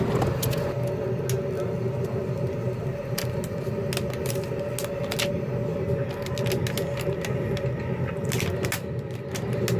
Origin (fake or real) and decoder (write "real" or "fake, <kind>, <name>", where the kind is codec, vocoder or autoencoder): real